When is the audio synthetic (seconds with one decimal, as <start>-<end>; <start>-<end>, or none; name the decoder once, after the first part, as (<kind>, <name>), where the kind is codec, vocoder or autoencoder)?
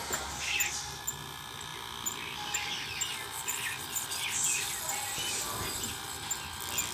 none